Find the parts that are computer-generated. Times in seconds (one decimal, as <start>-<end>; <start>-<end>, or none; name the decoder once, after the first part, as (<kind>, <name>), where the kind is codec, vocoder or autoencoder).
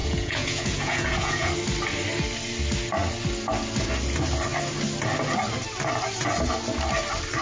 0.0-1.5 (vocoder, Vocos)